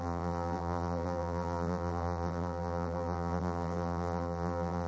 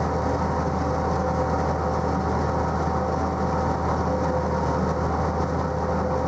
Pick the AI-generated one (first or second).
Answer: first